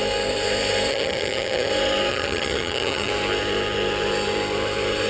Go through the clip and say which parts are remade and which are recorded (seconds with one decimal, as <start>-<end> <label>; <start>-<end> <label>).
0.0-0.9 recorded; 0.9-1.7 remade; 1.7-2.1 recorded; 2.1-3.1 remade; 3.1-5.1 recorded